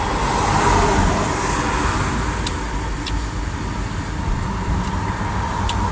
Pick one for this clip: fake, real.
real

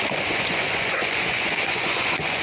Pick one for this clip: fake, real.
fake